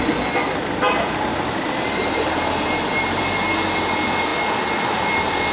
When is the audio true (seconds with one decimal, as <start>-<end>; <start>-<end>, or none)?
0.0-1.3; 3.2-5.5